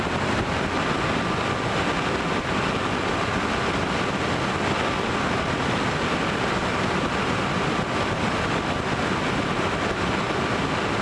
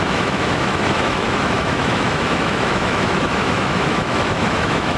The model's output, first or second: second